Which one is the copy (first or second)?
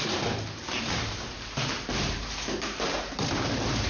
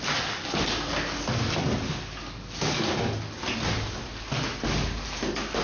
first